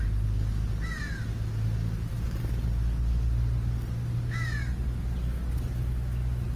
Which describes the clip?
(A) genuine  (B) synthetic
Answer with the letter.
A